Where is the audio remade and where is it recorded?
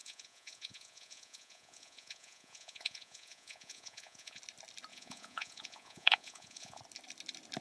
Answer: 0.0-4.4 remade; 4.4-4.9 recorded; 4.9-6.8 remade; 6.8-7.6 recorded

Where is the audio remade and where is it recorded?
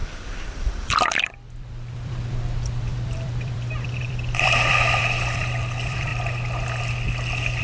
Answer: 0.0-0.5 recorded; 0.5-6.1 remade; 6.1-7.6 recorded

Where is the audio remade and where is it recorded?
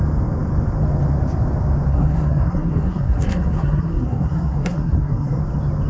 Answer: 0.0-1.9 recorded; 1.9-5.4 remade; 5.4-5.9 recorded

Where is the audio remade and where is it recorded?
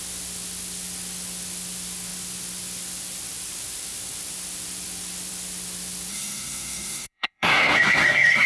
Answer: 0.0-6.1 recorded; 6.1-8.5 remade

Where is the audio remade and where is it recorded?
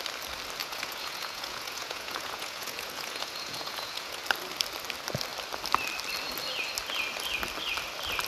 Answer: 0.0-0.6 recorded; 0.6-4.2 remade; 4.2-8.3 recorded